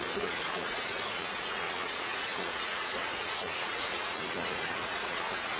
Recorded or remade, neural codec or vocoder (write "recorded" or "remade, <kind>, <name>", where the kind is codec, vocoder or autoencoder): remade, vocoder, Vocos